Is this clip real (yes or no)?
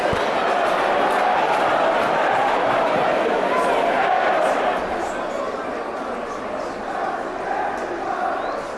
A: yes